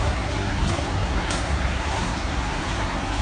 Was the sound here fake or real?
fake